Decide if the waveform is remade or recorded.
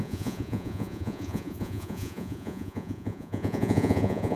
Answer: remade